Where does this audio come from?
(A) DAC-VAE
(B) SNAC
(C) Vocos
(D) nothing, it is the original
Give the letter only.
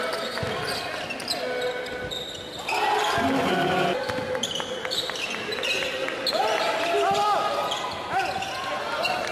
D